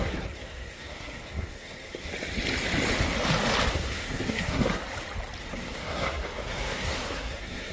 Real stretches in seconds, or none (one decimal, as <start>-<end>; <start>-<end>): 2.1-3.7; 4.8-5.4